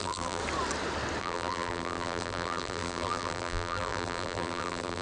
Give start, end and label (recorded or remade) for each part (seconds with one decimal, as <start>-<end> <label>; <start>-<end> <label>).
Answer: 0.0-0.4 remade; 0.4-1.2 recorded; 1.2-5.0 remade